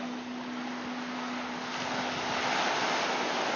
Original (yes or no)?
yes